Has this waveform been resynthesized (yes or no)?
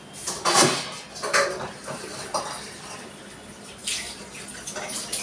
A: yes